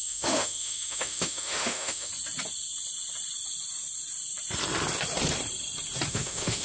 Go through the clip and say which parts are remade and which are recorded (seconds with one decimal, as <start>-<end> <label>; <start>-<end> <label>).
0.0-2.1 remade; 2.1-6.1 recorded; 6.1-6.6 remade